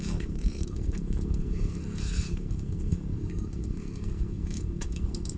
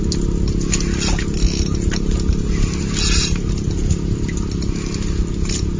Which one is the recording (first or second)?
second